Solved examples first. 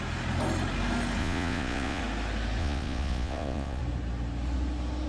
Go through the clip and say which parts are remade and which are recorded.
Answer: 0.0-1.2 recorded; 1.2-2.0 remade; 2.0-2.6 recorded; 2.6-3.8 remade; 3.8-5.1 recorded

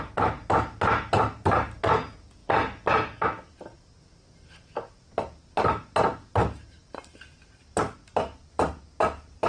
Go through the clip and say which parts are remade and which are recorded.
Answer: 0.0-9.5 recorded

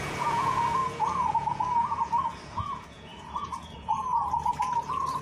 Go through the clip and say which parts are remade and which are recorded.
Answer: 0.0-5.2 remade

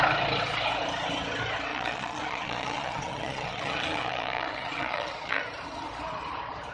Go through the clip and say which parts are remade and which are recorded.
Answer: 0.0-1.7 recorded; 1.7-5.4 remade; 5.4-6.7 recorded

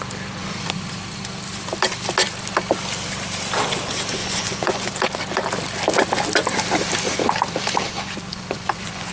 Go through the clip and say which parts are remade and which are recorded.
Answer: 0.0-4.2 recorded; 4.2-4.9 remade; 4.9-8.3 recorded; 8.3-9.1 remade